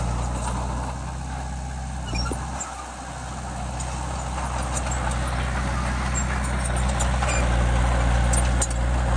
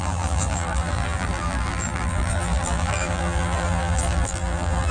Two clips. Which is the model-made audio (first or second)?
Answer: second